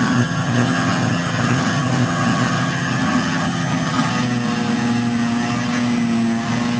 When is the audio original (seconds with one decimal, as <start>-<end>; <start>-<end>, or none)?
4.1-6.8